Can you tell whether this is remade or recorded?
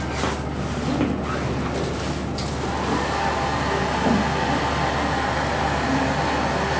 recorded